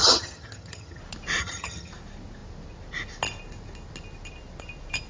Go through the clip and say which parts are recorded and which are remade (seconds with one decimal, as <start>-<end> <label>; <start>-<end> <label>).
0.0-1.0 remade; 1.0-1.4 recorded; 1.4-1.9 remade; 1.9-5.1 recorded